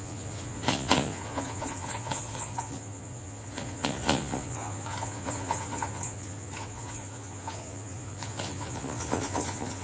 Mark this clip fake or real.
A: fake